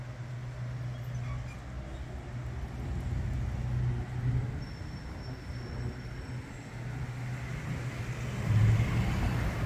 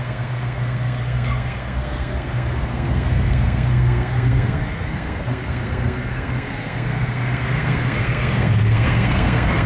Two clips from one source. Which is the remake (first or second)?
second